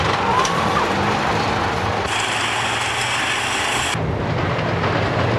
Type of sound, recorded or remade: recorded